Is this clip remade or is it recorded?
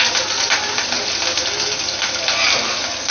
recorded